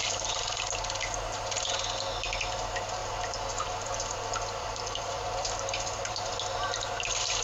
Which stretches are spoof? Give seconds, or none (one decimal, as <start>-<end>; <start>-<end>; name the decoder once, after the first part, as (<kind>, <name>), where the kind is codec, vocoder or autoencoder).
3.0-6.3 (vocoder, BigVGAN v2)